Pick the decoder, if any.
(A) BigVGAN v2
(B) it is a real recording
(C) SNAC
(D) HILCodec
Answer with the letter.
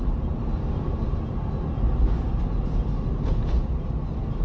B